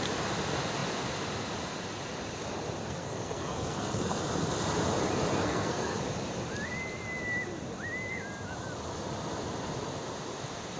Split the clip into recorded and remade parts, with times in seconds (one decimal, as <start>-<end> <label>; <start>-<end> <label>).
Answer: 0.0-2.8 recorded; 2.8-4.2 remade; 4.2-5.4 recorded; 5.4-6.0 remade; 6.0-10.8 recorded